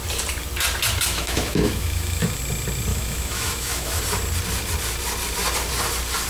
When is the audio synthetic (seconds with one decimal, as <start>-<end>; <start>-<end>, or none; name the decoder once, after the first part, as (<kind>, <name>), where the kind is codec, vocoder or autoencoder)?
1.1-2.4 (autoencoder, DAC-VAE); 2.9-4.0